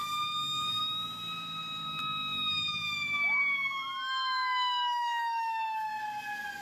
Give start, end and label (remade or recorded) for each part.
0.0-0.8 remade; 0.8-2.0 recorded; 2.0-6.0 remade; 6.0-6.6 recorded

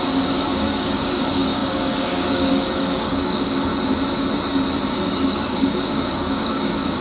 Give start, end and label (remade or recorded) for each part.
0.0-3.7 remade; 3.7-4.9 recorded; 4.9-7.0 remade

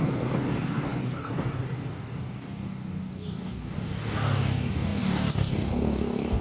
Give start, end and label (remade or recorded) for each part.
0.0-6.4 remade

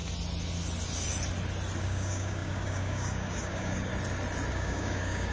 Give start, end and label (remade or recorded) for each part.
0.0-1.8 recorded; 1.8-3.9 remade; 3.9-4.5 recorded; 4.5-5.3 remade

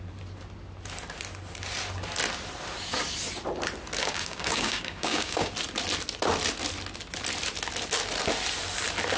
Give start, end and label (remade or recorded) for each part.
0.0-4.0 recorded; 4.0-5.5 remade; 5.5-9.2 recorded

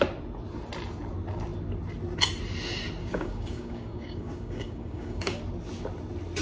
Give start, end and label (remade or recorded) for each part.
0.0-3.0 recorded; 3.0-5.4 remade; 5.4-6.4 recorded